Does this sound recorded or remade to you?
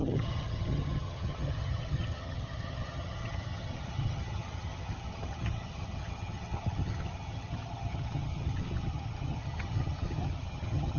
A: remade